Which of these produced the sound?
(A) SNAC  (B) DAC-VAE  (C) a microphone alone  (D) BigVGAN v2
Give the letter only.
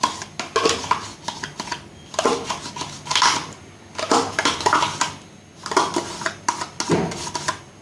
C